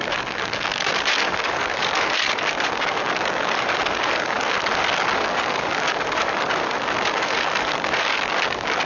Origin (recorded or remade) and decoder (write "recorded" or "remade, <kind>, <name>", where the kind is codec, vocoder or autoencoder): remade, codec, DAC